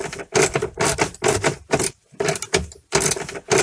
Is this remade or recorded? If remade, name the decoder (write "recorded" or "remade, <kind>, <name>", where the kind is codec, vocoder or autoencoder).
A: recorded